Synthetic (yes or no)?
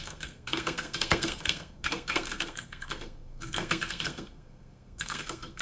yes